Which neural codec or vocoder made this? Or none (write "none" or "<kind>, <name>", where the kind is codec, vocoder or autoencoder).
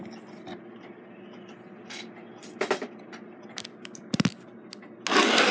none